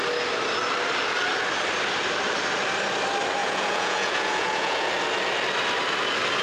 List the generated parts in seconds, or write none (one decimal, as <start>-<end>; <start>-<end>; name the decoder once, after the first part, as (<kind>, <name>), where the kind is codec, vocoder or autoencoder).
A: 3.4-4.9 (vocoder, Vocos)